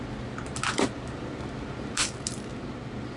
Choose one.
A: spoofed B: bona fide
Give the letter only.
B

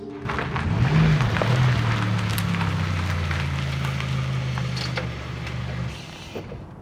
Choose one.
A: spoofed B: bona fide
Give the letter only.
B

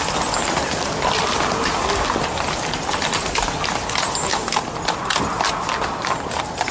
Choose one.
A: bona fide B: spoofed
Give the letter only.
A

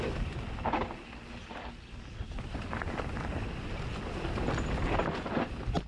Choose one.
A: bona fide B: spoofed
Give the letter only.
A